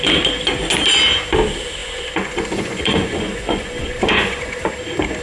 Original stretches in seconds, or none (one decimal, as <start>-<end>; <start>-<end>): 0.0-1.8; 4.7-5.2